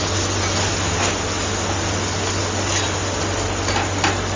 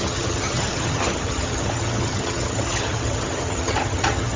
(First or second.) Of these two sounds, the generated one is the second